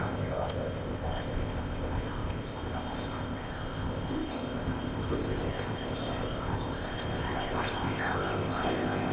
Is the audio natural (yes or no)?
no